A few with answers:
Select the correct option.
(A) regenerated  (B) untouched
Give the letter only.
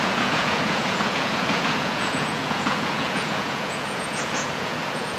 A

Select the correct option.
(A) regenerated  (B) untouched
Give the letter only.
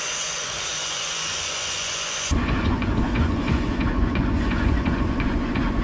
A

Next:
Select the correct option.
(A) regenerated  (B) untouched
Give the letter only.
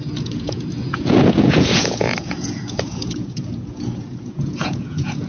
A